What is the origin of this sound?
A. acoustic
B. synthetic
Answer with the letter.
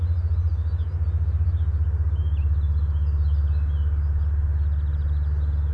A